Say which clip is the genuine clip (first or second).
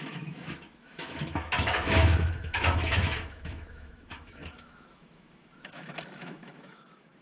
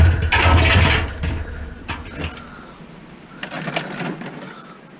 second